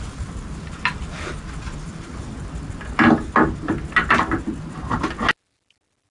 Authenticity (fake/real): real